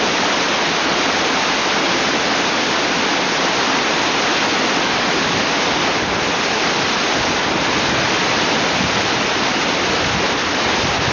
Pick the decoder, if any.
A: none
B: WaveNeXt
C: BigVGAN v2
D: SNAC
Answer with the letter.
A